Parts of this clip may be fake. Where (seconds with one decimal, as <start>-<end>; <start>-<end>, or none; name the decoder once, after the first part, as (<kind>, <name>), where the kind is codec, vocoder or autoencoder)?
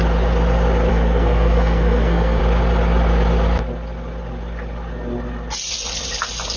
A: 0.9-2.4 (codec, SNAC)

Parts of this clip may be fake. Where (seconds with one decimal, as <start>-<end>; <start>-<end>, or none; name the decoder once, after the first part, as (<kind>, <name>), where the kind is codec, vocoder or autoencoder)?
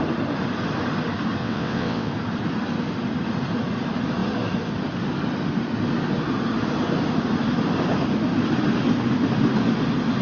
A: 1.4-2.1 (vocoder, WaveNeXt)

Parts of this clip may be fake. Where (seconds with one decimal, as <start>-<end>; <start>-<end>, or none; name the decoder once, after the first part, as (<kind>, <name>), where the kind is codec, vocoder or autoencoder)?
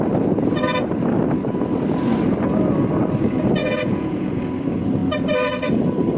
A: 3.6-4.4 (vocoder, Vocos)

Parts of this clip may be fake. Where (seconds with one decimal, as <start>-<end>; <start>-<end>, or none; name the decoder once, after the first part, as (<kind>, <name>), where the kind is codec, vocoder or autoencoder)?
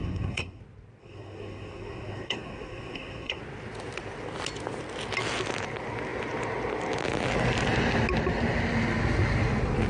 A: 0.0-0.6 (codec, SNAC); 1.0-3.4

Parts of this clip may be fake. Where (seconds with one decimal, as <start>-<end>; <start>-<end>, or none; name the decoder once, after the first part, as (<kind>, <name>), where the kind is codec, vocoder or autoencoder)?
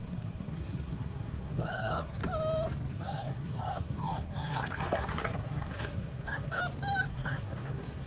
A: 0.0-2.2 (codec, SNAC); 2.9-6.6; 7.1-8.1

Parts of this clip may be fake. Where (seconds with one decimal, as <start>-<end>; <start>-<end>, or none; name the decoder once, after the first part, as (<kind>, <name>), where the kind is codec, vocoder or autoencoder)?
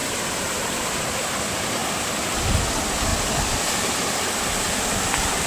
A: none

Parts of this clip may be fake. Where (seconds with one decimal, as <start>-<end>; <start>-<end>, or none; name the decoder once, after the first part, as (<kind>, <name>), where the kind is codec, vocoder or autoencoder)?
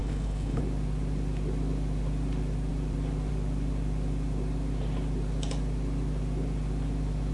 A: 0.0-0.6 (codec, HILCodec)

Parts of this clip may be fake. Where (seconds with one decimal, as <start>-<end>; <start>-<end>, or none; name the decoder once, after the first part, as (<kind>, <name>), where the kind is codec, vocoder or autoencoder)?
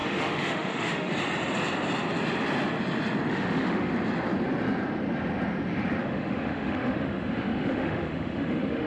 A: 0.0-1.1 (autoencoder, DAC-VAE); 3.3-3.9; 6.0-8.9